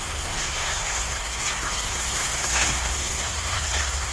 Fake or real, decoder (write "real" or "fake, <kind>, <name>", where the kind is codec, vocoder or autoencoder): fake, codec, SNAC